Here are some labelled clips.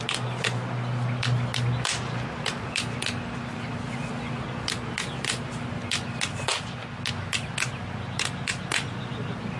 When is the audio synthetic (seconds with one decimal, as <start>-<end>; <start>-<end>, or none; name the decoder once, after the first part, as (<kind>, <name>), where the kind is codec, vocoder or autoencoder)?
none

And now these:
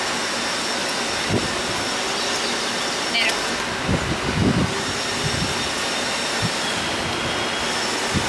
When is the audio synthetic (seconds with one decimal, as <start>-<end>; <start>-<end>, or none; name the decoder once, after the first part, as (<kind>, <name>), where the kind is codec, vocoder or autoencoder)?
none

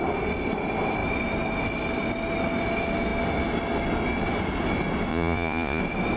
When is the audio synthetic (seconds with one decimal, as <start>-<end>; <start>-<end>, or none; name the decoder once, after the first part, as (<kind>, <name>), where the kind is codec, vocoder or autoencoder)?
5.1-5.8 (vocoder, Vocos)

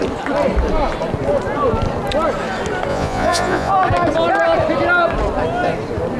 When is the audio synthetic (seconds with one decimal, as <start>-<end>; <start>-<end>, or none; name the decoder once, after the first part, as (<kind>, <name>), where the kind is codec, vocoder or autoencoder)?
2.9-3.7 (vocoder, Vocos)